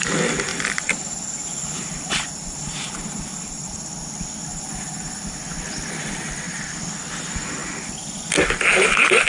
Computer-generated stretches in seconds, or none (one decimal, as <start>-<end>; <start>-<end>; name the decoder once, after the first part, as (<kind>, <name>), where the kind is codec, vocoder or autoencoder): 0.5-3.7 (vocoder, BigVGAN v2); 4.5-5.4